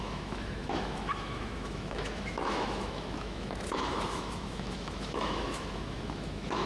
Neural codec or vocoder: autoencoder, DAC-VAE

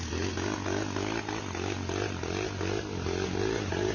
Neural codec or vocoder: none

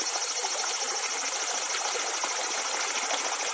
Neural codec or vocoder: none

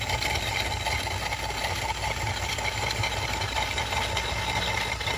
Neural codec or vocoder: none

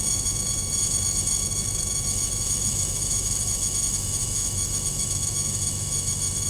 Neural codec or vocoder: autoencoder, DAC-VAE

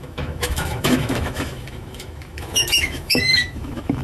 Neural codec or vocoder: autoencoder, DAC-VAE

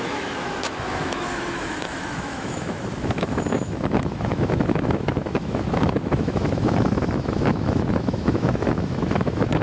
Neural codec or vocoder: autoencoder, DAC-VAE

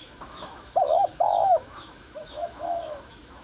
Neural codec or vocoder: autoencoder, DAC-VAE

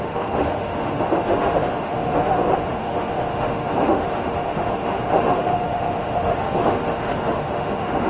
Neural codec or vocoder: autoencoder, DAC-VAE